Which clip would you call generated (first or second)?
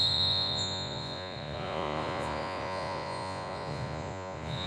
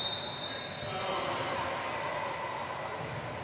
first